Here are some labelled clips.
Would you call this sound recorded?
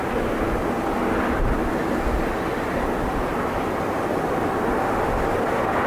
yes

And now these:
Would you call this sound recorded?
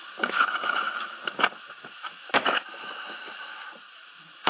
no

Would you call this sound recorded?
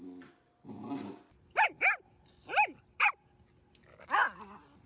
yes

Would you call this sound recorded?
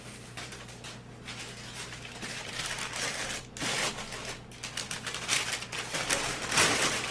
yes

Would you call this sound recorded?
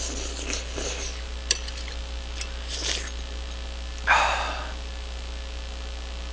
yes